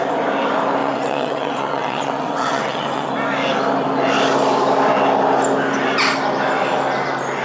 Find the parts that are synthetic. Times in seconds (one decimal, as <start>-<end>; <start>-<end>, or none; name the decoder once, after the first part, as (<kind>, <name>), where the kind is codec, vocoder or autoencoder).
0.8-3.1 (vocoder, WaveNeXt)